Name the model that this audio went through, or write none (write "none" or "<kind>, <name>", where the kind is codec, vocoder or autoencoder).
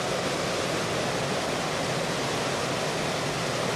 none